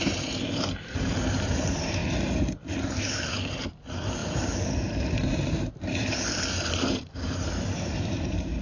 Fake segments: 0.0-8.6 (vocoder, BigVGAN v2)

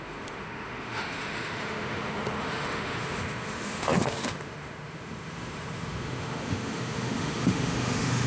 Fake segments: 0.0-8.3 (autoencoder, DAC-VAE)

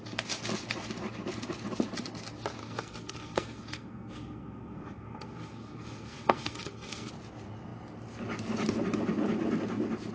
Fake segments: 2.6-7.1 (codec, SNAC)